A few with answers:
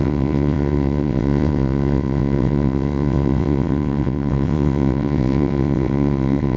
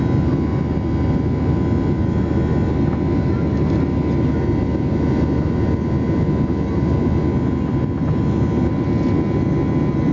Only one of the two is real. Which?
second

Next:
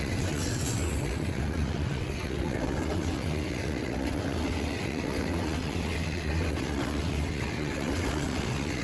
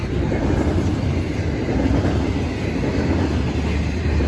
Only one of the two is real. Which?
second